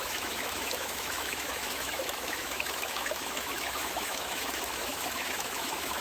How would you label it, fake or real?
fake